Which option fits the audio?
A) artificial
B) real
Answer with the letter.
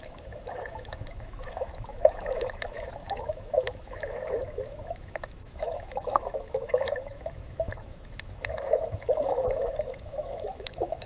A